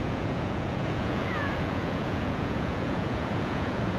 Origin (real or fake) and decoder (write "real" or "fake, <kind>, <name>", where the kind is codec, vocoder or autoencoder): fake, vocoder, Vocos